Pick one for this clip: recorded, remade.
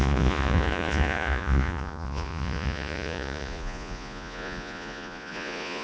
remade